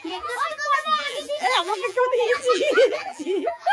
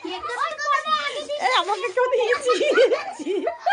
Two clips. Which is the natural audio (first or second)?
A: second